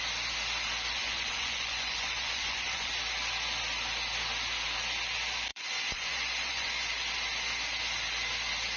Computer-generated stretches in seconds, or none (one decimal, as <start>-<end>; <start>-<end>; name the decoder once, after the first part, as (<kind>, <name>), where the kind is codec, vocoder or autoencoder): 0.9-2.9 (vocoder, Vocos); 5.5-6.7